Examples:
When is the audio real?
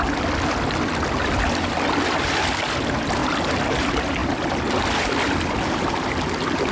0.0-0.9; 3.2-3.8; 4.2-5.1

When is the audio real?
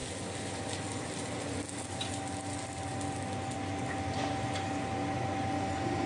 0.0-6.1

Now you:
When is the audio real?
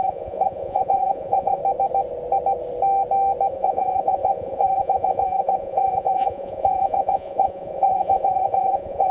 1.6-3.5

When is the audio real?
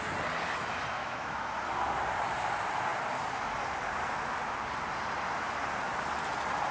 0.0-1.0; 1.5-6.7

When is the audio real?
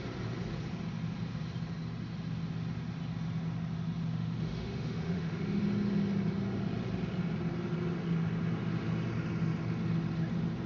0.0-4.1; 5.6-10.7